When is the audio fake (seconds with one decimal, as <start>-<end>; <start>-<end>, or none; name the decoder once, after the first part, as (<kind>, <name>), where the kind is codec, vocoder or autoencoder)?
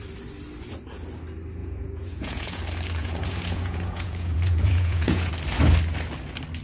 1.6-2.6 (vocoder, Vocos); 3.0-5.3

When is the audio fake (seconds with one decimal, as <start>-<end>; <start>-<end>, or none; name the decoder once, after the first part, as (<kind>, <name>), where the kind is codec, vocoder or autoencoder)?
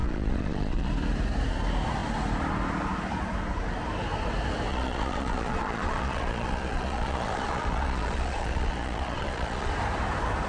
0.0-0.9 (vocoder, Vocos); 4.7-9.7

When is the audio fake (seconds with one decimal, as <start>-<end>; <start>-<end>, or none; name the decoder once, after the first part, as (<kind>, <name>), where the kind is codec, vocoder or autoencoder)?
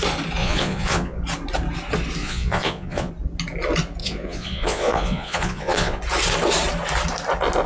0.4-1.2 (vocoder, Vocos); 2.2-3.1; 4.0-6.0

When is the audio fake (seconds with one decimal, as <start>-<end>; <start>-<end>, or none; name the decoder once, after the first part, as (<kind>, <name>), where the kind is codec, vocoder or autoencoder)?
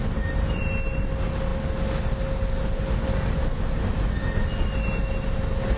none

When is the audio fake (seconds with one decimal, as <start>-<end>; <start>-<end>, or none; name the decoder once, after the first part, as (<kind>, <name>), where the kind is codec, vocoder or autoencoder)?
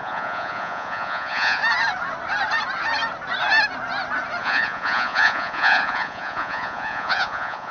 0.0-1.6 (vocoder, Vocos); 4.4-7.7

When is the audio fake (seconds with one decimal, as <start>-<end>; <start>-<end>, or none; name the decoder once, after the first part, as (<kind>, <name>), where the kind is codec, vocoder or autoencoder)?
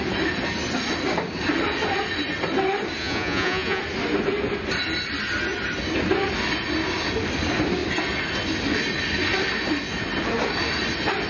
3.0-3.8 (vocoder, Vocos)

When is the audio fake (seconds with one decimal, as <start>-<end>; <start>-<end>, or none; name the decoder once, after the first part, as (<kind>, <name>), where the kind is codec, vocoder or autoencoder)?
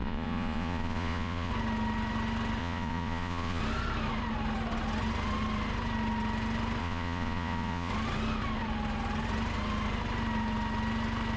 0.0-1.5 (vocoder, Vocos); 2.6-3.6; 6.8-7.9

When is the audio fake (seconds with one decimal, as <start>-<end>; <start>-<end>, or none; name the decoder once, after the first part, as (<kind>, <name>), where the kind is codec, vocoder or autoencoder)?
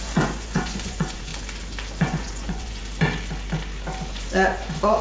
0.0-1.3 (vocoder, Vocos); 2.0-2.8; 4.1-5.0